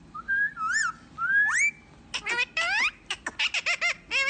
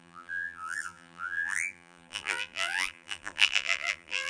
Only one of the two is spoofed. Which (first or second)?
second